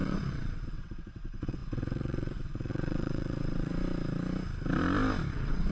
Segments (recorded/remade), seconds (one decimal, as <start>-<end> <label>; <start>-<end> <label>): 0.0-3.7 remade; 3.7-5.3 recorded; 5.3-5.7 remade